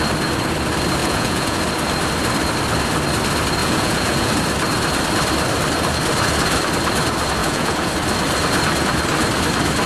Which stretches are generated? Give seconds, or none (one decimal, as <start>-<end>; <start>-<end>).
1.0-1.6; 3.6-4.3; 7.4-7.9